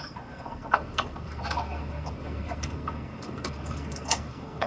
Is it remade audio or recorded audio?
remade